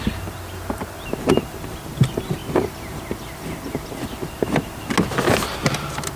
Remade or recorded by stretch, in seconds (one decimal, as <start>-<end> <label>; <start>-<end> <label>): 0.0-6.2 recorded